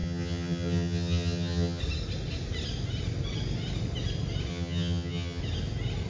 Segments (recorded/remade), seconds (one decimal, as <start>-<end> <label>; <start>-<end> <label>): 0.0-1.8 remade; 1.8-4.5 recorded; 4.5-5.4 remade; 5.4-6.1 recorded

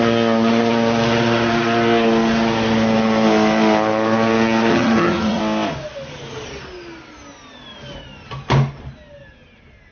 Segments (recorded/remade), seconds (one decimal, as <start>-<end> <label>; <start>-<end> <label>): 0.0-4.7 recorded; 4.7-5.4 remade; 5.4-9.9 recorded

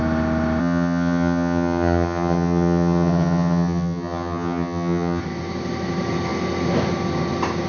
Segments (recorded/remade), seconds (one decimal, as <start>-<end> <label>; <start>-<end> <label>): 0.0-0.6 recorded; 0.6-5.2 remade; 5.2-7.7 recorded

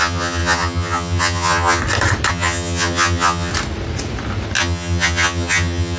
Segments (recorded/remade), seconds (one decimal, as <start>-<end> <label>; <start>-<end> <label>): 0.0-1.8 remade; 1.8-2.3 recorded; 2.3-3.5 remade; 3.5-4.6 recorded; 4.6-6.0 remade

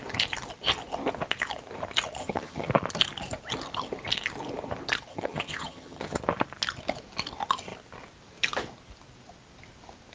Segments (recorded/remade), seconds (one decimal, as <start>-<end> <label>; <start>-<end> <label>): 0.0-2.2 recorded; 2.2-2.7 remade; 2.7-5.1 recorded; 5.1-6.2 remade; 6.2-10.1 recorded

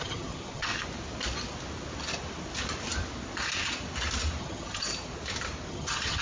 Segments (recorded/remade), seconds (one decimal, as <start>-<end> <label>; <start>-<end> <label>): 0.0-0.7 remade; 0.7-4.4 recorded; 4.4-4.9 remade; 4.9-5.7 recorded; 5.7-6.2 remade

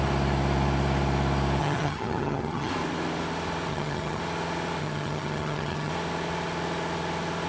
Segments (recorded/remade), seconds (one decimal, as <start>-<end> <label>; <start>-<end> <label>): 0.0-1.6 recorded; 1.6-2.7 remade; 2.7-3.7 recorded; 3.7-4.2 remade; 4.2-4.8 recorded; 4.8-5.9 remade; 5.9-7.5 recorded

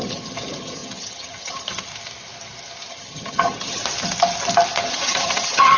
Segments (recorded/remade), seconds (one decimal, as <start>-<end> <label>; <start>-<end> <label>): 0.0-1.9 remade; 1.9-2.9 recorded; 2.9-3.8 remade; 3.8-4.9 recorded; 4.9-5.8 remade